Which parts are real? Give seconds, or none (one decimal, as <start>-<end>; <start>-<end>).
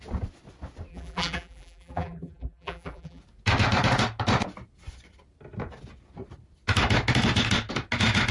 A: 0.0-0.9; 3.2-8.3